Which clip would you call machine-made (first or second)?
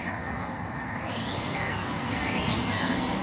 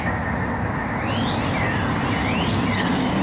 first